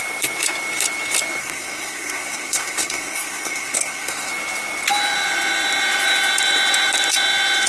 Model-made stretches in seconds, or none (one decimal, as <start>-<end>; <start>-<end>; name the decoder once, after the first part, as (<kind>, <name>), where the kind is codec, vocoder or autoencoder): 1.4-4.3 (codec, SNAC)